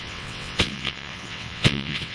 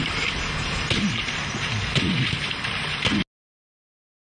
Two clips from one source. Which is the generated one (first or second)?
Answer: first